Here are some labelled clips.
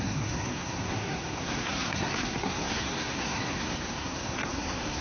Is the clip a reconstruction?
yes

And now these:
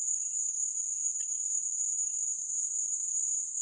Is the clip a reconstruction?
yes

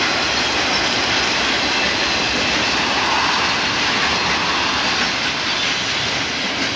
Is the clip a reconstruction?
no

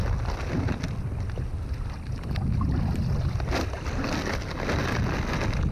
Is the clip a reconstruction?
no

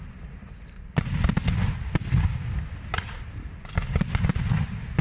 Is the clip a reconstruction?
no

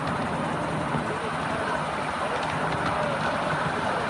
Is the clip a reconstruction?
no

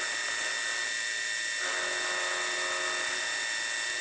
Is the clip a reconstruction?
no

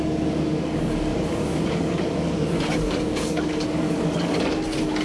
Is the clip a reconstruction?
yes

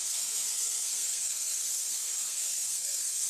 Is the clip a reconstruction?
yes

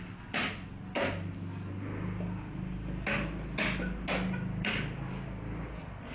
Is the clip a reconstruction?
no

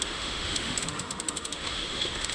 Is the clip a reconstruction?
yes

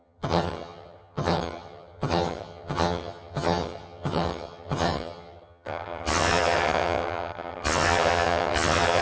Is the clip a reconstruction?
yes